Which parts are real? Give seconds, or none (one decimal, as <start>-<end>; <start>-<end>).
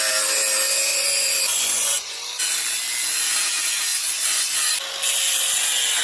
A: 0.0-0.9; 2.2-3.9; 4.7-6.0